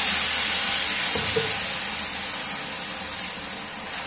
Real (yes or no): yes